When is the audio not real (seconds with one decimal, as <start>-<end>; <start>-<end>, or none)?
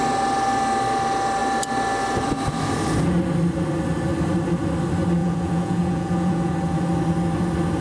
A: 5.2-6.5